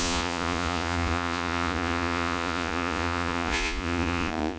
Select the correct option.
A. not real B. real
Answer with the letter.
A